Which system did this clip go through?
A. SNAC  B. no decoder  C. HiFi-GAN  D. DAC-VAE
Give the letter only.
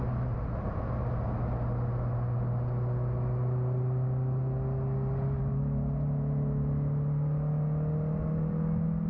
B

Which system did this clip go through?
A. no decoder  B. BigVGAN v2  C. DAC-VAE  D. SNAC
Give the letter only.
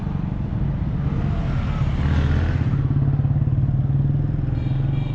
A